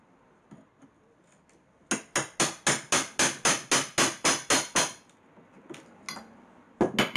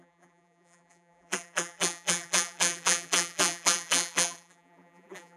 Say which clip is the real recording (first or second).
first